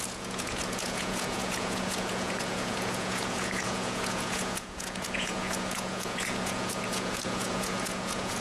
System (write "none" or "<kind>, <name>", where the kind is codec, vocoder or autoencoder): vocoder, Vocos